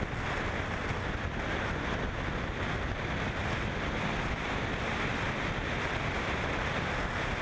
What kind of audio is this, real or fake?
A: real